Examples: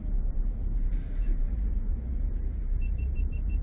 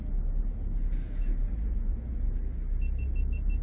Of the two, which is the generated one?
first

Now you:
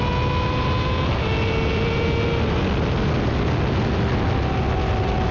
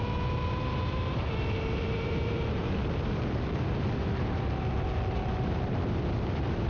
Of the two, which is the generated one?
second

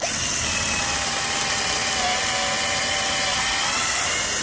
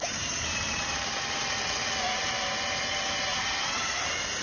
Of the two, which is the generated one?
second